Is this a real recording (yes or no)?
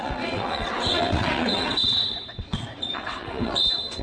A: no